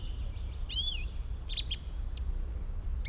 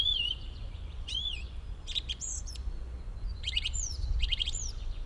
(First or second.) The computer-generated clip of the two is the second